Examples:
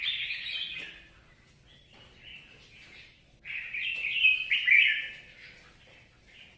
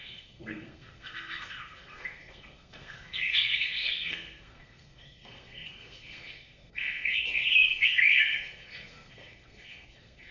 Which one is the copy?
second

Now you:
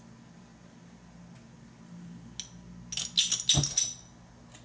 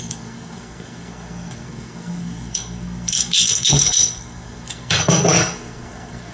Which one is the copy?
second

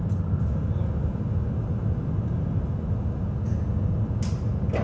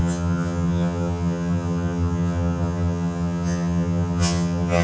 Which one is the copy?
second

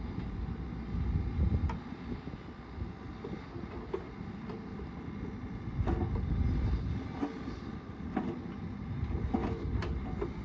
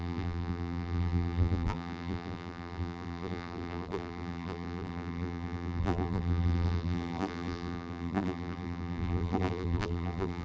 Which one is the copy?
second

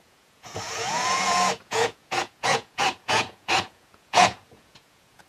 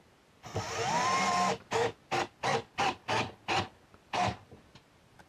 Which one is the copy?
first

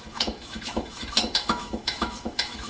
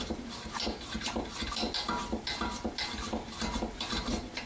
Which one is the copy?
first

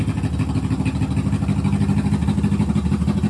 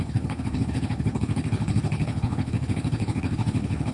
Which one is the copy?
second